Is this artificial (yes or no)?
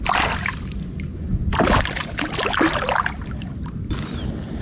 no